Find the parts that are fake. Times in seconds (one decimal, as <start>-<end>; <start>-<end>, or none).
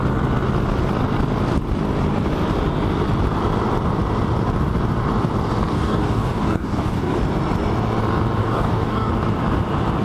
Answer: 5.7-7.2; 8.4-9.1